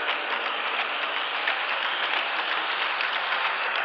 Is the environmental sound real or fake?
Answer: real